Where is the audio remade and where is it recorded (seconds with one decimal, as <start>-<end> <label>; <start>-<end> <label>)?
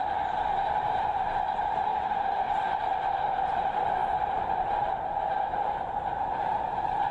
0.0-7.1 remade